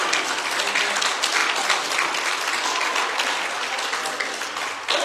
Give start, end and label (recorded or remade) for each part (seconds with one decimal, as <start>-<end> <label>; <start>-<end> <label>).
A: 0.0-5.0 recorded